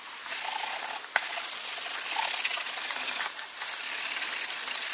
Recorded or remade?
recorded